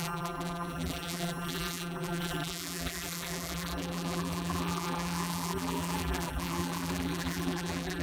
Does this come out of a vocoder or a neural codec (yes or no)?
yes